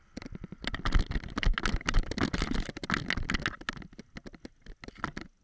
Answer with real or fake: real